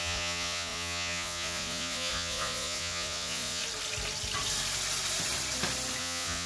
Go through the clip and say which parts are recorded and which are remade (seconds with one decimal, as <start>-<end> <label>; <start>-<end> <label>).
0.0-3.6 remade; 3.6-6.0 recorded; 6.0-6.5 remade